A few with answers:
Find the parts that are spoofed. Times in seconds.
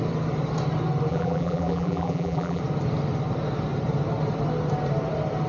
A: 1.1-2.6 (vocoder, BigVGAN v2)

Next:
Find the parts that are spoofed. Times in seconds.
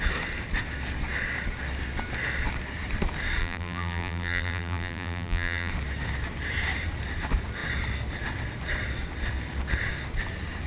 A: 3.4-5.7 (vocoder, BigVGAN v2)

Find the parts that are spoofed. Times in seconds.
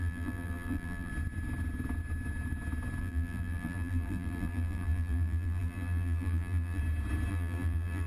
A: 0.0-1.1 (vocoder, BigVGAN v2); 3.0-6.8; 7.3-8.1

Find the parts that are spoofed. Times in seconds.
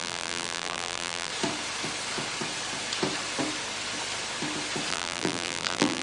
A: 0.0-1.3 (vocoder, BigVGAN v2); 4.9-6.0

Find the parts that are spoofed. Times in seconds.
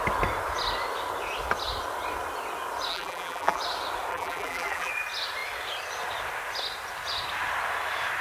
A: 2.9-3.6 (vocoder, BigVGAN v2); 4.1-4.9